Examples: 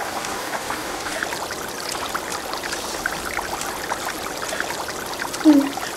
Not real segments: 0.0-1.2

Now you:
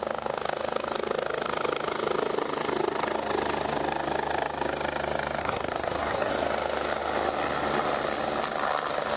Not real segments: 5.4-6.3